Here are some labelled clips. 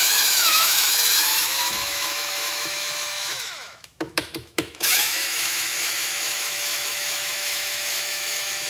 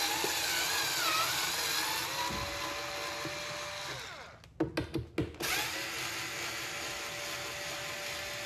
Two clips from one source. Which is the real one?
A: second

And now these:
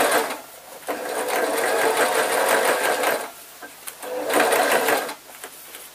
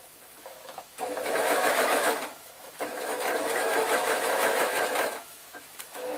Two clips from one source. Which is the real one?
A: first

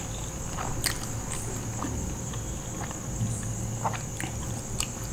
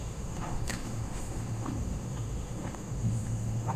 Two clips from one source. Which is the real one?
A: first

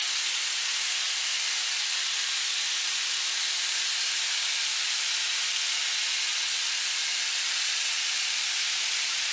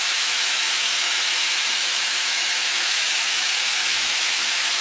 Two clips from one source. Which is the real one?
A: first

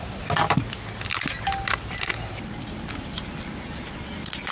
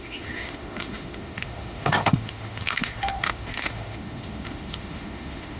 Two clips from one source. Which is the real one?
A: first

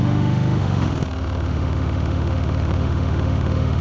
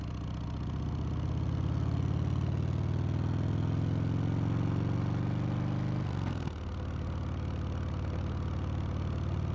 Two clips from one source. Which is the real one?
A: second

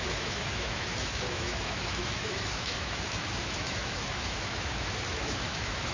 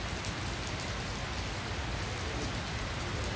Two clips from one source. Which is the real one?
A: second